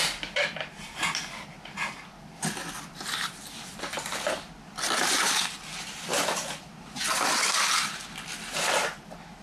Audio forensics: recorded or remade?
recorded